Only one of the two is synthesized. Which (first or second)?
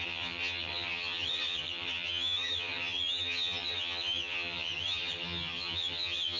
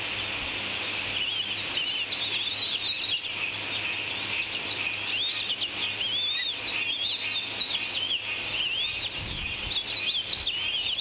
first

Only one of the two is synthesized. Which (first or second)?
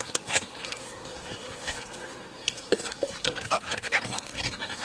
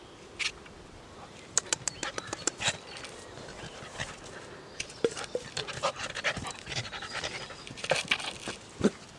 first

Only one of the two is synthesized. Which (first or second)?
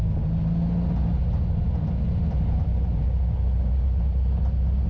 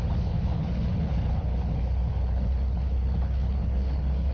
second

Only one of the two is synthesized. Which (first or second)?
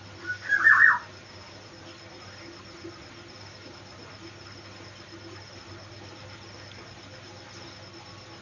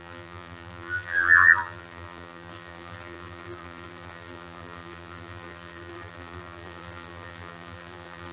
second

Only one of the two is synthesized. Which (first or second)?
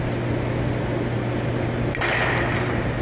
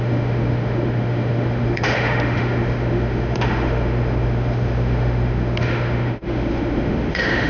second